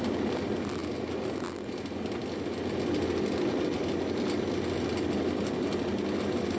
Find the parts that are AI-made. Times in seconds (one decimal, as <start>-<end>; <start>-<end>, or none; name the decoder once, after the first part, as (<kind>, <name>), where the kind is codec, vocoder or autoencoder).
none